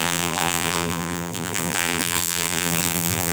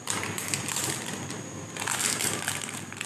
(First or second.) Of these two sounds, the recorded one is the second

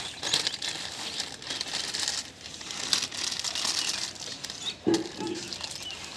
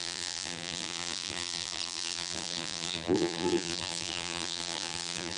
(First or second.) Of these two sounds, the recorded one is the first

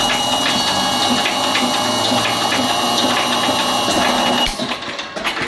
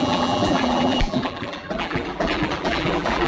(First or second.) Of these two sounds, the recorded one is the first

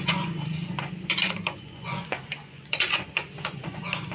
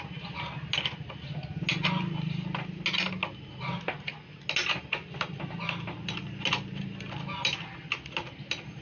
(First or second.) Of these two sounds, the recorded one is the second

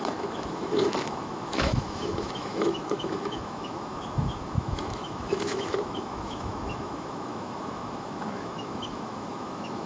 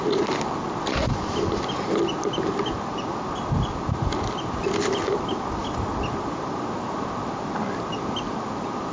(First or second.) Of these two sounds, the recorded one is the second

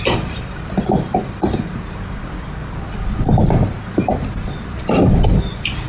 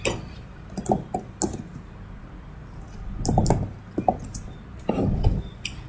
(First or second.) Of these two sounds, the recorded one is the second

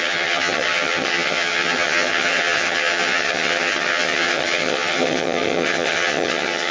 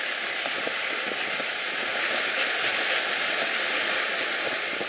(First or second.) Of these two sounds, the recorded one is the second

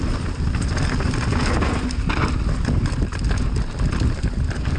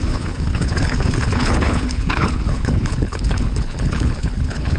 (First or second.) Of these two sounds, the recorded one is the first